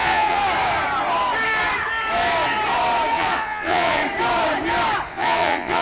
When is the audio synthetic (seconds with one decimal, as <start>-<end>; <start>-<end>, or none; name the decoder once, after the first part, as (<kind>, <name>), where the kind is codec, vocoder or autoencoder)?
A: 0.0-0.4 (vocoder, Vocos); 3.1-4.0; 5.1-5.8

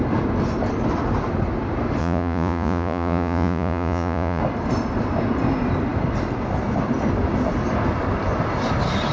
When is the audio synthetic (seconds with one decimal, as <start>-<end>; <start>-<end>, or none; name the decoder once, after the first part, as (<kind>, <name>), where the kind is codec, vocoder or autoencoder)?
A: 2.0-4.4 (vocoder, Vocos)

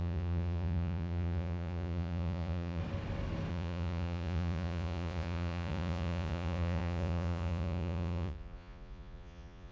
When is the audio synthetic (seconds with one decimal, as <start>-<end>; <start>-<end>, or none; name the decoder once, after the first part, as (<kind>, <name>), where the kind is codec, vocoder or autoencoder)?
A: 0.0-2.8 (vocoder, Vocos); 3.5-9.7

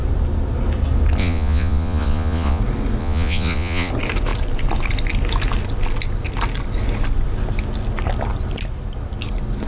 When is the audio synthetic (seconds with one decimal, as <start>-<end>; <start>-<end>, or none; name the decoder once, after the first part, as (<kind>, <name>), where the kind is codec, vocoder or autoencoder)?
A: 1.2-2.6 (vocoder, Vocos); 3.0-3.9

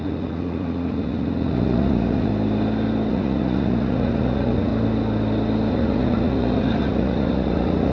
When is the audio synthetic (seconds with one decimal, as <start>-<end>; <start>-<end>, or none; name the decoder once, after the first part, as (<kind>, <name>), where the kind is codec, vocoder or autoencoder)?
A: 0.0-2.3 (vocoder, Vocos); 3.1-4.7; 5.7-7.9

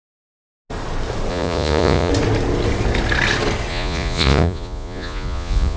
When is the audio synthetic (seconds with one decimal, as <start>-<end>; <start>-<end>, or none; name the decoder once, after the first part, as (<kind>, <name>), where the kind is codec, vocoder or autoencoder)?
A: 1.3-2.1 (vocoder, Vocos); 3.7-5.8

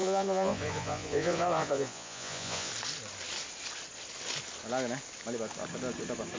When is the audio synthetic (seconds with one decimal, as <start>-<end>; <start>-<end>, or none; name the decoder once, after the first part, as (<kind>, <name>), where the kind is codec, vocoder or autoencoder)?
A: 0.0-2.7 (vocoder, Vocos)

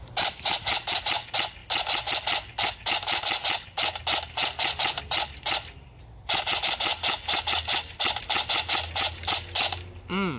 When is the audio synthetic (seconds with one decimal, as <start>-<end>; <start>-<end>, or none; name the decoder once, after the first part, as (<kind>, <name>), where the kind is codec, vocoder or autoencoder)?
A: none